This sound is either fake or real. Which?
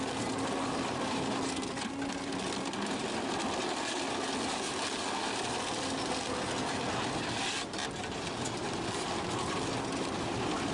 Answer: real